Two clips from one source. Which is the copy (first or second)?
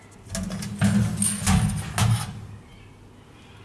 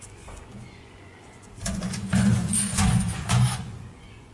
second